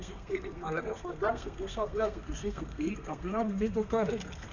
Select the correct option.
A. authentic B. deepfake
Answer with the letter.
B